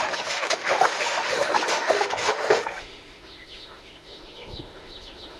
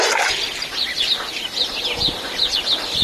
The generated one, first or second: first